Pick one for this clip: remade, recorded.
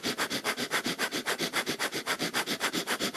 remade